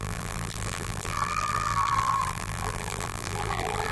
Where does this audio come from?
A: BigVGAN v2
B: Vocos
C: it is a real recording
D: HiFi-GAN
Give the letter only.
A